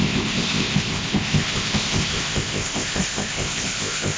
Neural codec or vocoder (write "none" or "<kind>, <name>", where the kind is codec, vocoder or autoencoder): codec, ZipCodec